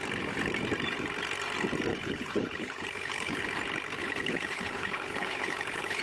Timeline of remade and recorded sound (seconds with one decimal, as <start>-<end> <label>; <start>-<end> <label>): 0.0-1.9 recorded; 1.9-3.4 remade; 3.4-4.0 recorded; 4.0-6.0 remade